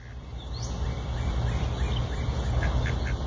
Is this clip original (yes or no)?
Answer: yes